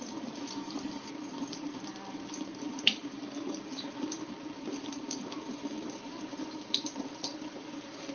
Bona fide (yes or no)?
no